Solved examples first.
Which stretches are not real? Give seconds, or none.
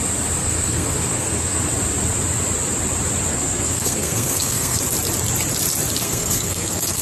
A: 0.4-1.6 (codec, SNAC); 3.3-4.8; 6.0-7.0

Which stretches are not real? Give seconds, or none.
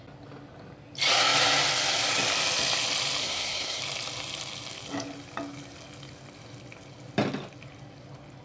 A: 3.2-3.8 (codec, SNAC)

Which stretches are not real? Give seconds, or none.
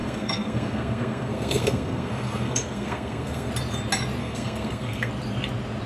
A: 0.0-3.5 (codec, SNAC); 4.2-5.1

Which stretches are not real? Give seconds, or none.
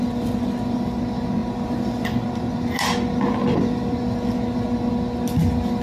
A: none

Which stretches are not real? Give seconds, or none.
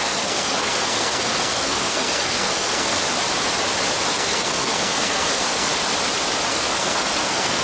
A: 0.0-3.0 (codec, SNAC); 4.1-5.7; 6.5-7.6